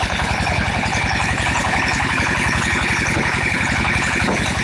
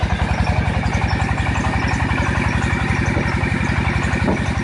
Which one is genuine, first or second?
second